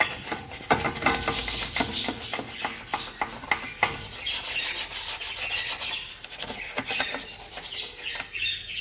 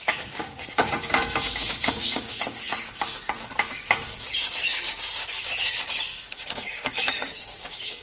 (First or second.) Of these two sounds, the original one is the first